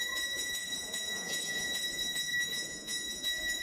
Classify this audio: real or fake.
fake